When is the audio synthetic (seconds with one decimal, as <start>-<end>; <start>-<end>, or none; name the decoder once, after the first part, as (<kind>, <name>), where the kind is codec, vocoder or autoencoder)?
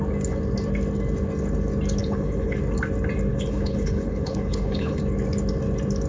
2.0-2.6 (codec, HILCodec); 3.3-5.0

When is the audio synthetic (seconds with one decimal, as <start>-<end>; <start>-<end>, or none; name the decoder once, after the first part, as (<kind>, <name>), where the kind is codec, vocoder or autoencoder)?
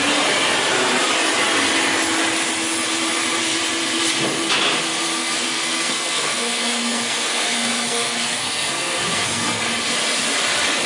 5.2-9.6 (codec, SNAC)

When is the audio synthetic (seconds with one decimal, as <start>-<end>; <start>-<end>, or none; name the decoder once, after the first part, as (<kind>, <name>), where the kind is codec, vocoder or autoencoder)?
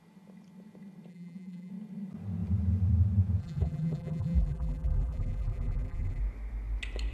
1.1-1.7 (vocoder, BigVGAN v2); 3.4-6.2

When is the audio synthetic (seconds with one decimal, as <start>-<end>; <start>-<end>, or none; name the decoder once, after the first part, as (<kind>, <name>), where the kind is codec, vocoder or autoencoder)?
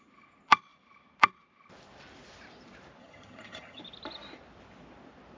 3.0-3.8 (vocoder, HiFi-GAN)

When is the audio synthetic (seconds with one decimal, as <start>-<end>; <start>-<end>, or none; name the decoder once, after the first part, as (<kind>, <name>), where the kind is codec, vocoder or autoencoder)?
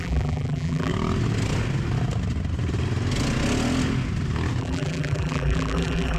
0.0-0.9 (vocoder, BigVGAN v2); 4.6-6.2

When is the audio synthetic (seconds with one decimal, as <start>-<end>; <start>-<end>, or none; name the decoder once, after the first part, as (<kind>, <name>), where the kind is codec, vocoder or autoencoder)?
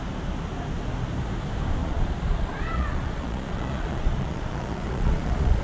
1.8-5.6 (vocoder, Vocos)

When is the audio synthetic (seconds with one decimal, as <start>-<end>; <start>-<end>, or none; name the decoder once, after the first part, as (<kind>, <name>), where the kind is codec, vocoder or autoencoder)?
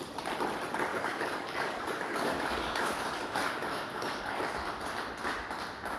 0.9-4.4 (codec, DAC)